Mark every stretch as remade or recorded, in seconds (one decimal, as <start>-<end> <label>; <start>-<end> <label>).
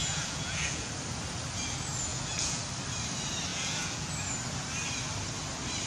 0.0-0.9 remade; 0.9-2.1 recorded; 2.1-2.6 remade; 2.6-3.5 recorded; 3.5-4.1 remade; 4.1-5.9 recorded